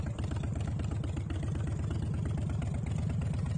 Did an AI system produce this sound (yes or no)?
no